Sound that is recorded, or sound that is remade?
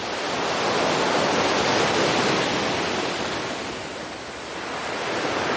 recorded